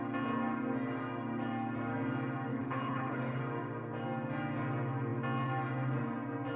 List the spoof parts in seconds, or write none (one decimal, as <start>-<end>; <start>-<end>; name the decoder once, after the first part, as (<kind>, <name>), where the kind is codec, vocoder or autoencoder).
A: 2.5-3.4 (codec, HILCodec)